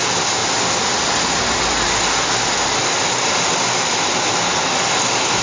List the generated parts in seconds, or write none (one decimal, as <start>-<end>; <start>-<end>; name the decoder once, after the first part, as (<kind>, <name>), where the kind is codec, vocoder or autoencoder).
none